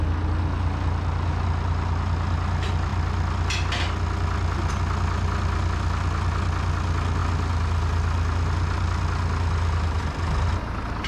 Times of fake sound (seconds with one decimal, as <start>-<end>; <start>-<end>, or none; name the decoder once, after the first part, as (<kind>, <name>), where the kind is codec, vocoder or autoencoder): none